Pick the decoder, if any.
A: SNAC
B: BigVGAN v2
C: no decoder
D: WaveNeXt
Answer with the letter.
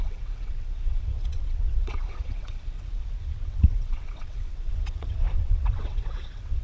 D